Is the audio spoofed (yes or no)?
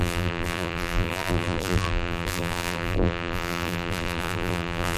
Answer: yes